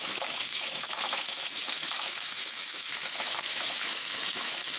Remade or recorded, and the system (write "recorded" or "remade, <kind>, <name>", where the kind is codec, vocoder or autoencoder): remade, autoencoder, DAC-VAE